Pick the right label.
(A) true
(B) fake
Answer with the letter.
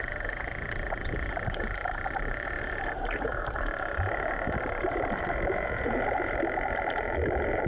B